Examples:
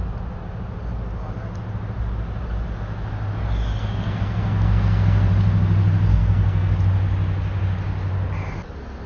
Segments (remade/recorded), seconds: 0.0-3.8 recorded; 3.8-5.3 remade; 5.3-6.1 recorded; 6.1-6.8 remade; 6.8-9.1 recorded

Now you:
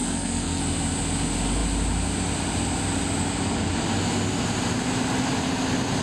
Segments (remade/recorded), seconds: 0.0-0.6 remade; 0.6-6.0 recorded

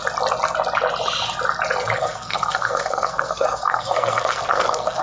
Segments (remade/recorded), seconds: 0.0-2.0 recorded; 2.0-5.0 remade

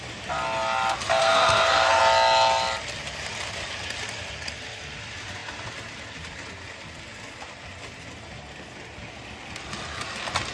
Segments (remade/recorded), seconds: 0.0-1.2 recorded; 1.2-2.0 remade; 2.0-10.5 recorded

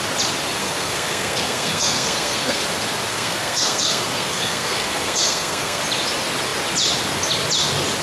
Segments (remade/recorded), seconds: 0.0-0.6 recorded; 0.6-2.6 remade; 2.6-3.1 recorded; 3.1-5.8 remade; 5.8-8.0 recorded